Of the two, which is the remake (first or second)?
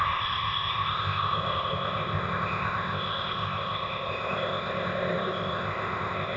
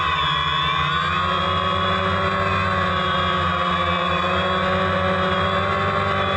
first